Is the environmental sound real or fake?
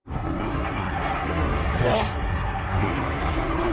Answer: fake